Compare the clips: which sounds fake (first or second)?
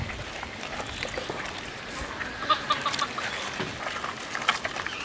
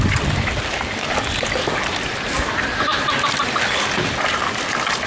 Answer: second